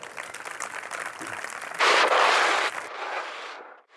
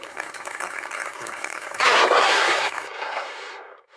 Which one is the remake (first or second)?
second